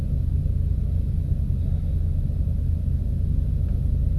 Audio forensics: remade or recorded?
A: recorded